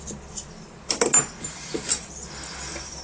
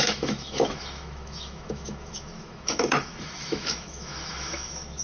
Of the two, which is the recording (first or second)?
first